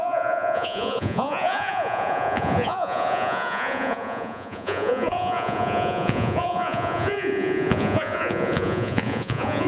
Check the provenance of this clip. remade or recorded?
remade